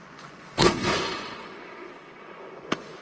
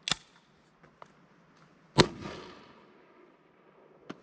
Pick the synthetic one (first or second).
first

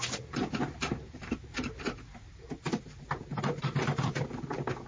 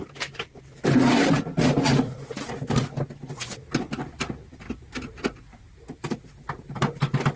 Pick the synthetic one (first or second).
first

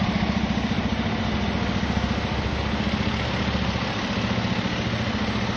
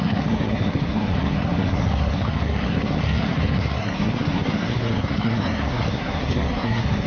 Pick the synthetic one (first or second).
second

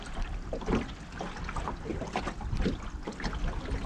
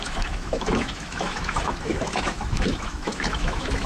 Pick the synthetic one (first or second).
second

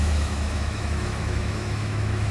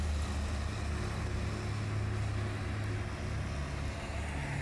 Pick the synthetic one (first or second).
first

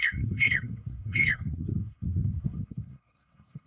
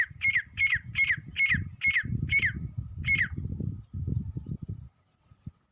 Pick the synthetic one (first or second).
first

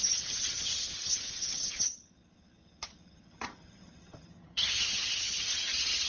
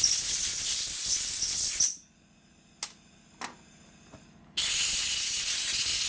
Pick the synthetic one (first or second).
first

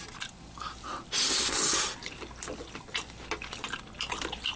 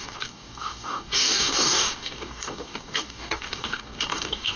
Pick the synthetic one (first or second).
second